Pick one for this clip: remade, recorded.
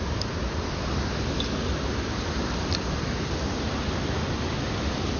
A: recorded